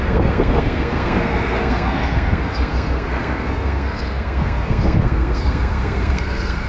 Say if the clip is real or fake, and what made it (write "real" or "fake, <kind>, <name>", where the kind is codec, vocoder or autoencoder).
fake, codec, SNAC